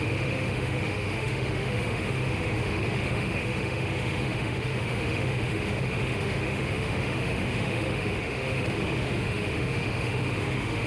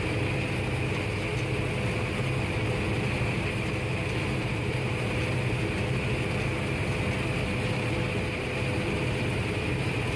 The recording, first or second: second